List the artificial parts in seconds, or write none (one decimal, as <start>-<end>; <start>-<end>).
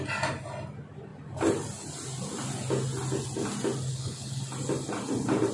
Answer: 3.9-4.4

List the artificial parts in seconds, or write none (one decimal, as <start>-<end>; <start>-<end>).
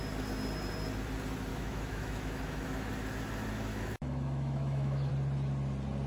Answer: 1.5-2.9; 3.7-5.1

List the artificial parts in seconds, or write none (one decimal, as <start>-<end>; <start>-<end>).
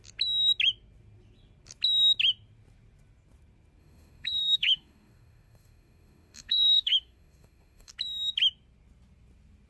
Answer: 3.8-7.9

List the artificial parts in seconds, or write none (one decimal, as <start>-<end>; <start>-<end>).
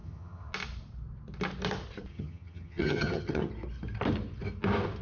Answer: 0.0-0.5; 2.1-3.5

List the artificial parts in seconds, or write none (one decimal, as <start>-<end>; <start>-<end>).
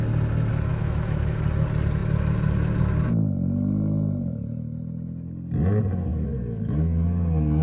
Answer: 0.7-1.4; 6.1-6.6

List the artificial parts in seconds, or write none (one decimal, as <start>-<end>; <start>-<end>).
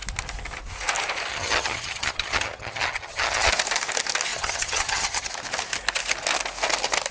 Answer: 1.3-3.5; 4.3-5.3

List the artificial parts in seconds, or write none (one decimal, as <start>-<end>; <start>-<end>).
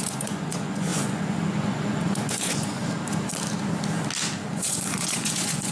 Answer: 0.0-2.8; 4.5-5.7